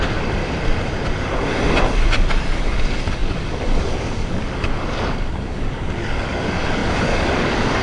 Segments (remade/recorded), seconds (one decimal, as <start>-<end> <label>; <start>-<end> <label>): 0.0-0.4 remade; 0.4-2.6 recorded; 2.6-7.8 remade